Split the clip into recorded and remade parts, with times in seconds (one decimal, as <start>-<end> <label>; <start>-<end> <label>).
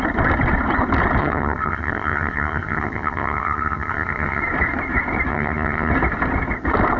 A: 0.0-1.2 recorded; 1.2-4.4 remade; 4.4-5.3 recorded; 5.3-5.9 remade; 5.9-7.0 recorded